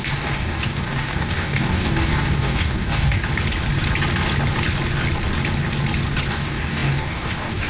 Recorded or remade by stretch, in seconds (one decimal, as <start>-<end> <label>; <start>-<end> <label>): 0.0-3.2 remade; 3.2-6.3 recorded; 6.3-7.7 remade